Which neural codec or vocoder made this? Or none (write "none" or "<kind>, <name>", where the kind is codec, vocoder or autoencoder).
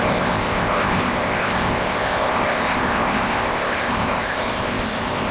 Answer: codec, ZipCodec